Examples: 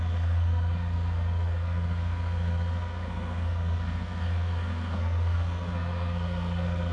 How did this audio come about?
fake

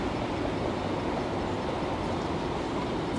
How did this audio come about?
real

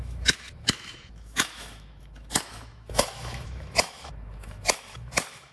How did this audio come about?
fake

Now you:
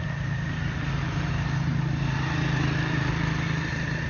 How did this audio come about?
real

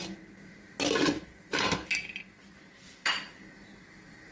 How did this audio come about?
real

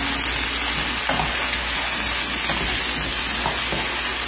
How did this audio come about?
real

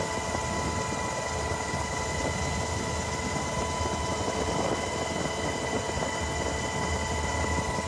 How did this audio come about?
real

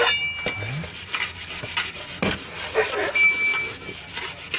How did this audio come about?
real